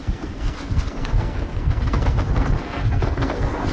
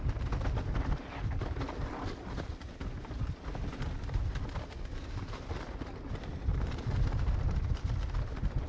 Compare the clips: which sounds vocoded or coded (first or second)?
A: first